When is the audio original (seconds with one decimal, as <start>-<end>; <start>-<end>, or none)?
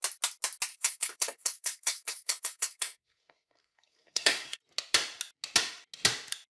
0.0-0.7; 4.6-6.5